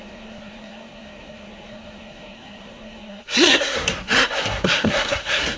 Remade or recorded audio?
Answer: remade